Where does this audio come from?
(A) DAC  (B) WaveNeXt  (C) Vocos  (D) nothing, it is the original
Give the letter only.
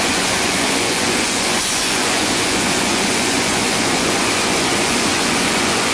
C